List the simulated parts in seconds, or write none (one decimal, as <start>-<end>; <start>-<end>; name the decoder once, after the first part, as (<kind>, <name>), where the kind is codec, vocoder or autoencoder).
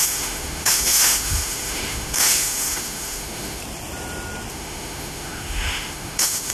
0.0-3.6 (autoencoder, DAC-VAE); 4.5-6.5